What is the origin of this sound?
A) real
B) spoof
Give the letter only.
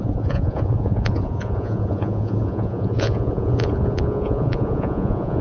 B